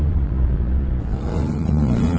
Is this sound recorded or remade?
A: remade